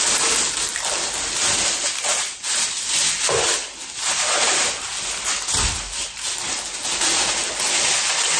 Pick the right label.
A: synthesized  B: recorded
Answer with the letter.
B